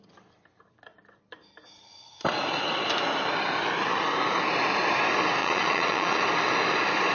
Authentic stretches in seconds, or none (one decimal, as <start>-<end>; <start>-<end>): 0.0-5.4; 6.2-7.1

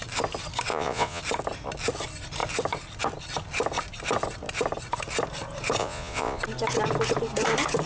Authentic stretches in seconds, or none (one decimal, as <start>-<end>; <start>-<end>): 0.0-0.7; 1.2-5.8; 6.4-7.9

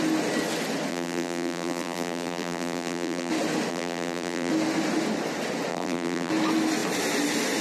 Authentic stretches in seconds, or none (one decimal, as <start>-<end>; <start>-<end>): 0.0-0.9; 3.3-3.7; 4.5-5.7; 6.3-7.6

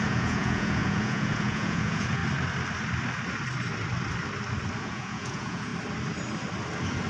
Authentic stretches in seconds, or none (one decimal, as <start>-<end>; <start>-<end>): 2.2-4.8; 5.7-7.1

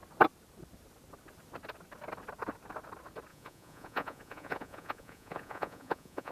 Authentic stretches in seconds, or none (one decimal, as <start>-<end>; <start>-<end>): 0.0-3.3